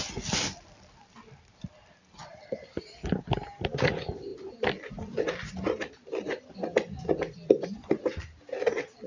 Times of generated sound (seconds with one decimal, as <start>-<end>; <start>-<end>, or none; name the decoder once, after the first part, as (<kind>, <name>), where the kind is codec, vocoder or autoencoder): none